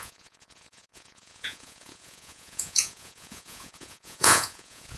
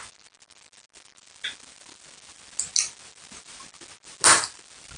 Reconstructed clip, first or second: first